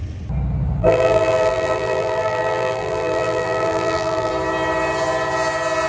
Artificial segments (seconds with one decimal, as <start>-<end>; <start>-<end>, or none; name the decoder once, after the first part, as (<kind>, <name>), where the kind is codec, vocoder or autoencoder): 0.8-4.3 (vocoder, BigVGAN v2)